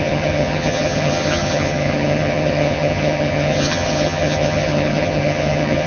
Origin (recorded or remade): remade